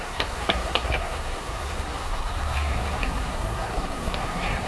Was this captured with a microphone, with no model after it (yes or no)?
no